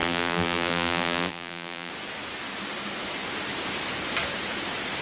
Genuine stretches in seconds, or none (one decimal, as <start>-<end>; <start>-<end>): 1.9-5.0